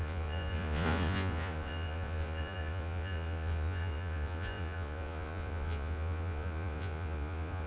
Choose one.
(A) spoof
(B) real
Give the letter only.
A